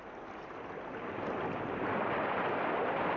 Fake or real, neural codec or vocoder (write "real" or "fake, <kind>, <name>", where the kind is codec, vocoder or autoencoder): real